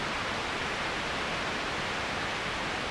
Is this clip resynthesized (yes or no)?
no